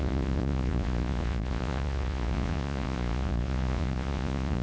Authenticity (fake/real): fake